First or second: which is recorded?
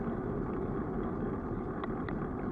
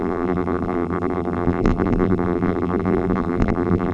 first